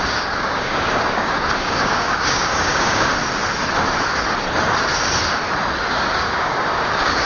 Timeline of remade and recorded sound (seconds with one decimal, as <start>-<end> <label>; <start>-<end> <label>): 0.0-3.1 remade; 3.1-5.9 recorded; 5.9-7.3 remade